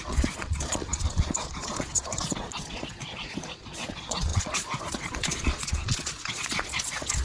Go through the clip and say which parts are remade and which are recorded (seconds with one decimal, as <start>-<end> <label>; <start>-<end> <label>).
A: 0.0-7.2 remade